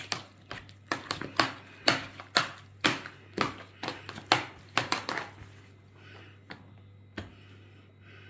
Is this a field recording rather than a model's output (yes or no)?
yes